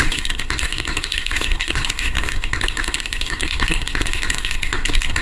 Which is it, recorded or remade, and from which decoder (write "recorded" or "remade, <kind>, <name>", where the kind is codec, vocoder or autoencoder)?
remade, codec, SNAC